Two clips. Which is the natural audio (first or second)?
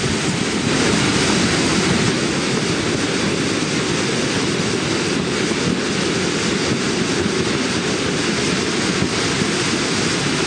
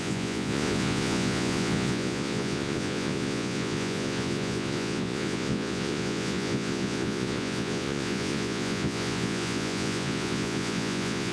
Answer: first